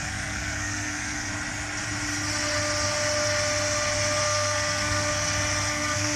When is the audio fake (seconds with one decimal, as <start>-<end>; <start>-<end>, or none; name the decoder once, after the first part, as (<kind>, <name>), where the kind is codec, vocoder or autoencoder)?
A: 0.0-1.3 (codec, SNAC); 4.2-5.1; 5.7-6.2

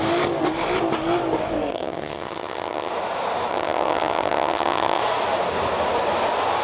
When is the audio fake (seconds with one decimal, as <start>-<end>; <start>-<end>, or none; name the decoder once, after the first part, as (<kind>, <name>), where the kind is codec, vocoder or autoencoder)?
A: 1.7-2.9 (vocoder, HiFi-GAN); 3.5-5.0

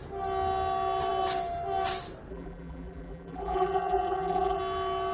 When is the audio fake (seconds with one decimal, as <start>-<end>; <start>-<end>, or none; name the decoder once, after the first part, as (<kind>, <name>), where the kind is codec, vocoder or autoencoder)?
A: 2.3-4.6 (vocoder, BigVGAN v2)